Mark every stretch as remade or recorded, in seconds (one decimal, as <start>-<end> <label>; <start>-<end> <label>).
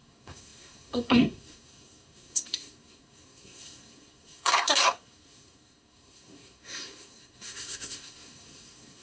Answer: 0.0-9.0 remade